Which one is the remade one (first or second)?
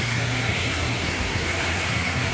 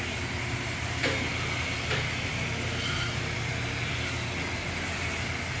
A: first